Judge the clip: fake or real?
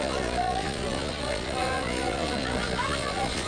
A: fake